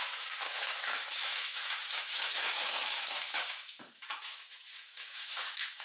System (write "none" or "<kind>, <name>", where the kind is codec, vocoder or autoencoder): autoencoder, DAC-VAE